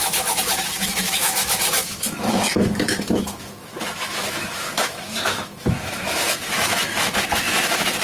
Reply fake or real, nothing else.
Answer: fake